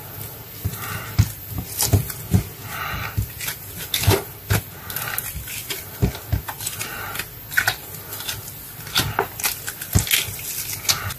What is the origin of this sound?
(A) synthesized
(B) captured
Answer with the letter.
B